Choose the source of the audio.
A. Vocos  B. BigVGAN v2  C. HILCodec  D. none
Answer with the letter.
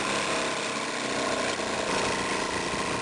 D